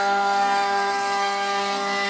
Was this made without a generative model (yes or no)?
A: no